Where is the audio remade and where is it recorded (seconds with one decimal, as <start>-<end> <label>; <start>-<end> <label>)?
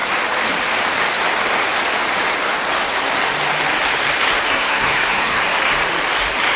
0.0-4.5 recorded; 4.5-5.4 remade; 5.4-6.6 recorded